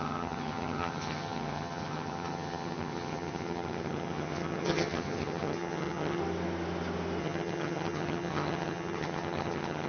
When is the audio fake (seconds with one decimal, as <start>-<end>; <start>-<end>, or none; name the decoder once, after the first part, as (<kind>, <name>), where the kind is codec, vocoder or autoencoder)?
0.0-6.2 (vocoder, HiFi-GAN); 7.2-9.9